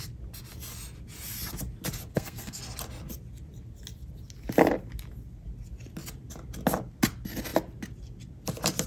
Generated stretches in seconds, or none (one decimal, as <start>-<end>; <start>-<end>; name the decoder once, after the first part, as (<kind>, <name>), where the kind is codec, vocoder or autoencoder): 2.1-2.6 (codec, SNAC)